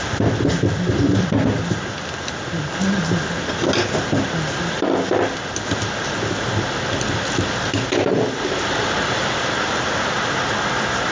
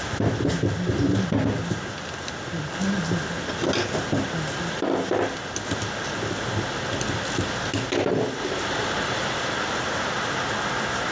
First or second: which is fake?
first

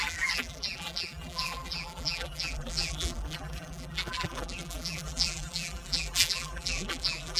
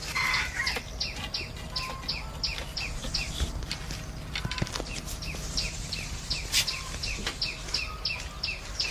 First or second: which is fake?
first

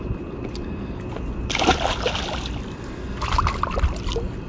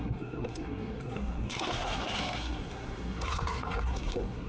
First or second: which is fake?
second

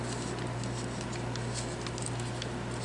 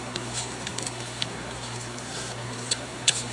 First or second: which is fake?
second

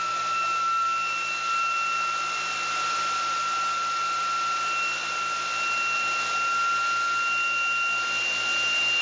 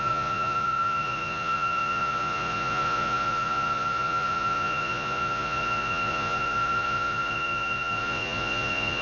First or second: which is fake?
second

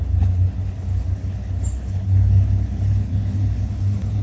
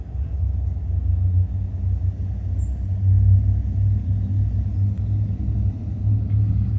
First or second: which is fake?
first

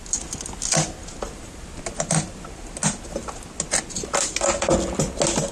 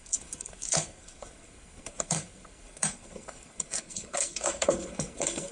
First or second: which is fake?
second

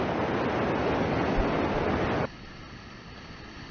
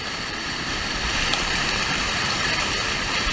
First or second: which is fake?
second